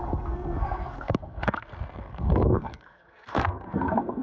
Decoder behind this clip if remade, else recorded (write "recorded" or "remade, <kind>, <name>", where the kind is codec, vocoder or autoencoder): remade, codec, SNAC